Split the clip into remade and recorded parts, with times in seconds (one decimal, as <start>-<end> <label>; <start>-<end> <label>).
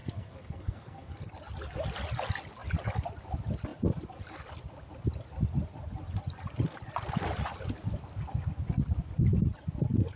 0.0-1.3 remade; 1.3-10.2 recorded